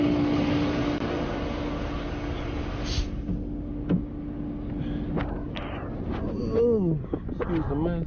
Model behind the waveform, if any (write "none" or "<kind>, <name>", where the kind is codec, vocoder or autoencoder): none